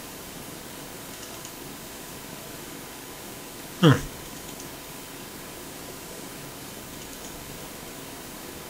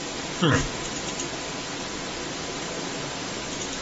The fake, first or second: first